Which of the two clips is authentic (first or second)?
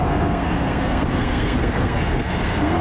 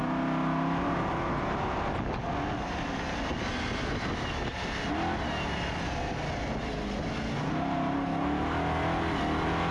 second